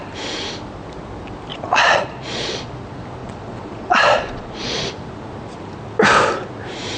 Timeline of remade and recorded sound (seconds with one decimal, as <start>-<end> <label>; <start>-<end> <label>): 0.0-1.5 recorded; 1.5-2.7 remade; 2.7-3.2 recorded; 3.2-4.9 remade; 4.9-7.0 recorded